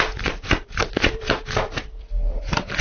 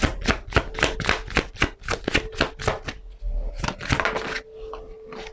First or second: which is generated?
first